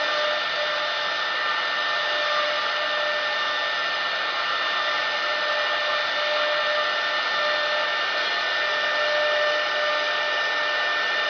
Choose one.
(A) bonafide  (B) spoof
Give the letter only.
A